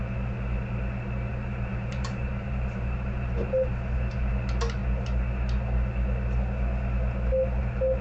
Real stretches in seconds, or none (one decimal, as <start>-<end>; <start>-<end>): 0.0-1.3; 4.3-8.0

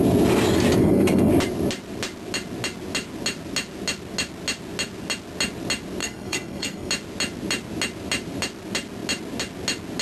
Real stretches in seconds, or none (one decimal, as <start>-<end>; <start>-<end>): 0.0-0.8; 1.3-6.0; 6.9-10.0

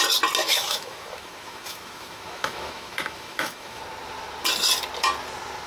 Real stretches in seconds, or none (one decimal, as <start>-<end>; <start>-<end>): 0.0-0.4; 3.8-5.7

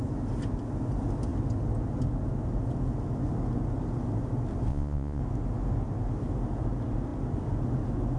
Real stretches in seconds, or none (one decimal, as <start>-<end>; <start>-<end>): 0.0-4.7; 5.2-8.2

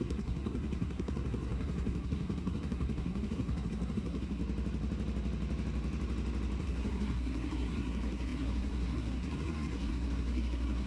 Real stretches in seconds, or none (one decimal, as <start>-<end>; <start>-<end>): 4.4-6.6

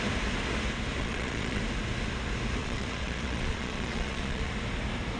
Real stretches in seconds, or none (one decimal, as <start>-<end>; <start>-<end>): 0.0-1.0; 1.6-2.6; 4.5-5.2

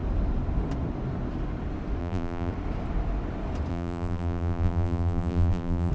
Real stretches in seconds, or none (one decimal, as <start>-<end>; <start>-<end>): 0.0-2.0; 2.5-3.7

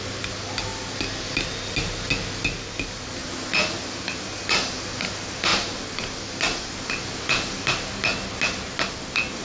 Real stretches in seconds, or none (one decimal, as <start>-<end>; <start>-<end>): 0.0-9.4